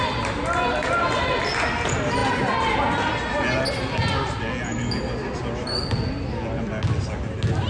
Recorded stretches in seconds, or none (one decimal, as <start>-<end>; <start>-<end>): 0.0-2.2; 2.8-7.7